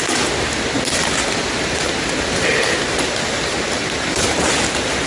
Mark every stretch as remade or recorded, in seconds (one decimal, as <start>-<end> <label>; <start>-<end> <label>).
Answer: 0.0-1.4 recorded; 1.4-4.5 remade; 4.5-5.1 recorded